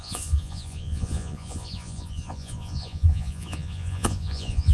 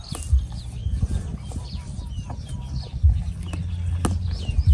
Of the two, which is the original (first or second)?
second